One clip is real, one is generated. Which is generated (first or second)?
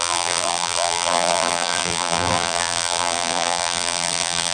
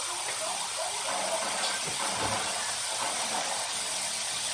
first